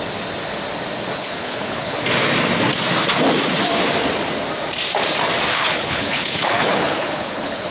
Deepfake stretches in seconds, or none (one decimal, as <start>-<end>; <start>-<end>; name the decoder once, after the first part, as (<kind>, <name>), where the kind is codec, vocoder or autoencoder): 1.1-2.0 (codec, HILCodec); 5.5-7.7

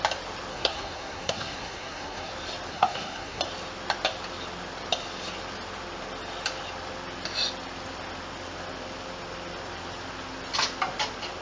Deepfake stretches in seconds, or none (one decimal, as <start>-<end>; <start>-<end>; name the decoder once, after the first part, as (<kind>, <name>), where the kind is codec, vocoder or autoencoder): 0.5-2.3 (codec, SNAC); 2.7-3.4